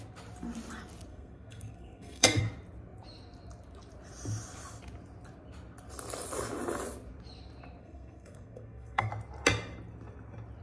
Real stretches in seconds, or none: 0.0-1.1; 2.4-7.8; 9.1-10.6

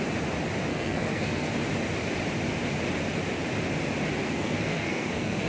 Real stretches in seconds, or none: 0.0-0.7; 1.5-4.2

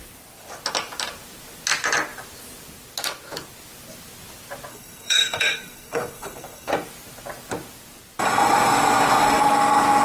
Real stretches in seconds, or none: 0.0-4.7; 6.7-10.0

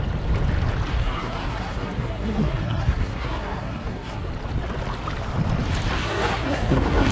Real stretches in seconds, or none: 0.0-0.9; 4.3-6.0